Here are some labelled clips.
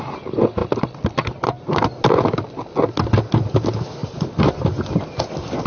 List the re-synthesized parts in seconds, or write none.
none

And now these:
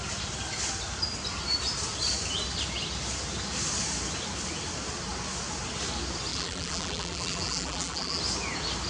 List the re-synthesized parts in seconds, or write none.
6.3-8.2 (vocoder, BigVGAN v2)

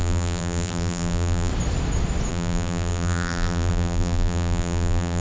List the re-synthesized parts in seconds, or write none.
0.0-1.5 (vocoder, BigVGAN v2); 2.3-5.2